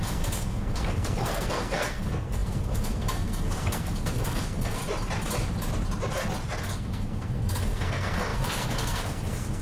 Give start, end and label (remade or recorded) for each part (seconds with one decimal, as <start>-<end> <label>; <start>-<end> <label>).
0.0-4.8 remade; 4.8-6.6 recorded; 6.6-9.6 remade